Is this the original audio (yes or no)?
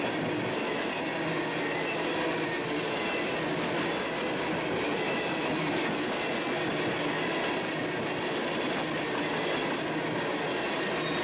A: yes